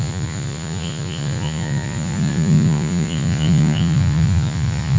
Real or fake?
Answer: fake